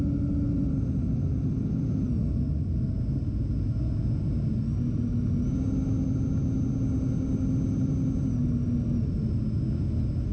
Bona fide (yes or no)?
yes